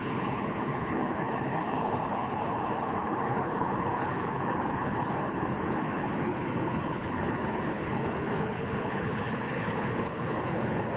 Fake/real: fake